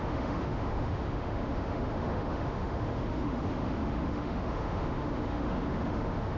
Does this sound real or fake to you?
fake